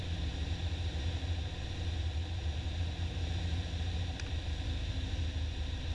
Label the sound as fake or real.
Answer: real